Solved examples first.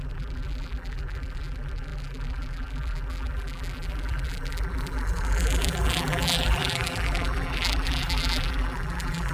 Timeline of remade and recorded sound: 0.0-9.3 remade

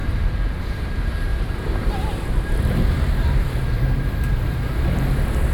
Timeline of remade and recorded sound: 0.0-1.3 recorded; 1.3-4.6 remade; 4.6-5.5 recorded

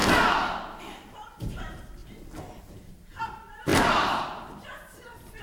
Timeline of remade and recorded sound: 0.0-0.8 recorded; 0.8-2.0 remade; 2.0-2.6 recorded; 2.6-5.4 remade

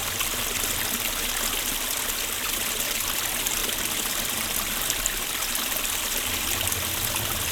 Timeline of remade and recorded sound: 0.0-7.5 recorded

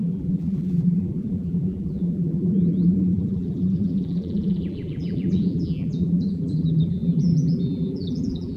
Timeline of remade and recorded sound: 0.0-8.6 remade